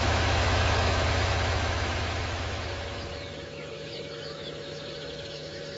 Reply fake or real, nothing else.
fake